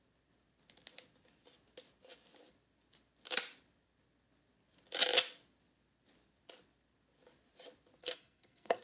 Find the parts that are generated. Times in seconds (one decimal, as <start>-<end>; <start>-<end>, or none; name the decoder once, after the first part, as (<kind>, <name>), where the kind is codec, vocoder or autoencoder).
8.0-8.8 (codec, SNAC)